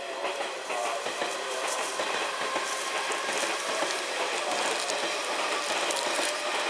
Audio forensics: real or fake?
real